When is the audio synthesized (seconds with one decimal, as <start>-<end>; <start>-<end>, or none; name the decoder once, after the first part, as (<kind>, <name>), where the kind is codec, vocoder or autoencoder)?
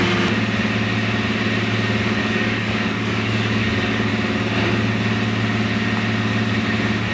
2.2-4.1 (codec, DAC)